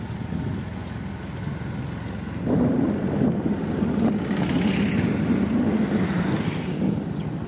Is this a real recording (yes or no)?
yes